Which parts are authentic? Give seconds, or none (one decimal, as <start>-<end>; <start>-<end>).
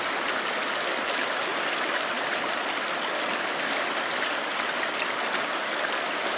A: 0.0-6.4